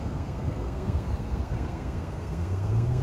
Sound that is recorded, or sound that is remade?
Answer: remade